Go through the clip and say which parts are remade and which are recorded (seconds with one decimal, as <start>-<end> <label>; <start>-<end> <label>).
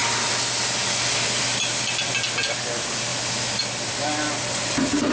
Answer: 0.0-5.1 recorded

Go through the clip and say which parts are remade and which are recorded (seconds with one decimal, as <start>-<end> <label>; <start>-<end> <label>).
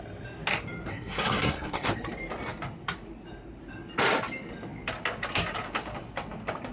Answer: 0.0-0.9 recorded; 0.9-1.9 remade; 1.9-6.7 recorded